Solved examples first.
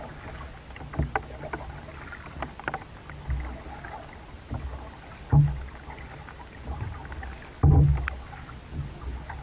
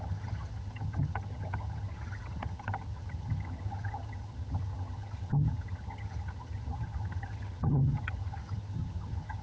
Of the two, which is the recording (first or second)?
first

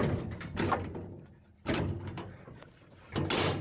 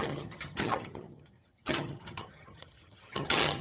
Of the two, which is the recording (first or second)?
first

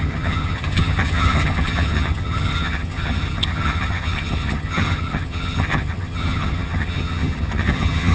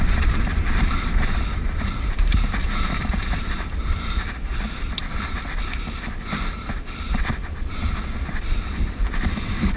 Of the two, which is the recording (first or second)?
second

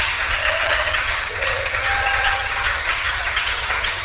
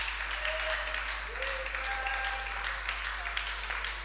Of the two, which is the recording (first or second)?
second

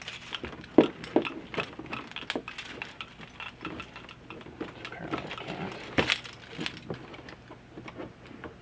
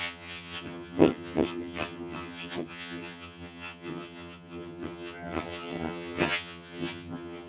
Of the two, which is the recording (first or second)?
first